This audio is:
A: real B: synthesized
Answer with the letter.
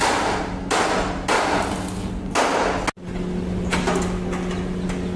A